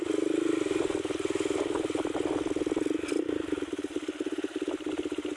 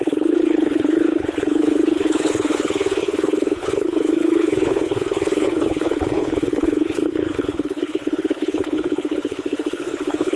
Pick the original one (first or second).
first